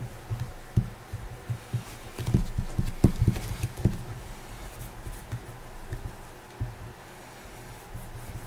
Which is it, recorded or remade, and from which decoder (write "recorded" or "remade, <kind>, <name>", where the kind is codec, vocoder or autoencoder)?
recorded